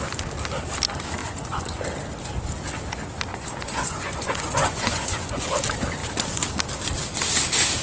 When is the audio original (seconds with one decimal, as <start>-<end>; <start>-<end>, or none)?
0.0-1.2; 1.8-3.3; 5.5-7.8